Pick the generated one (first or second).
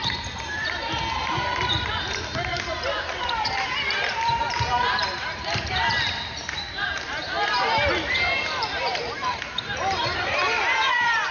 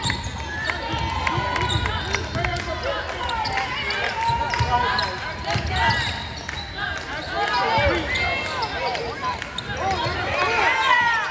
first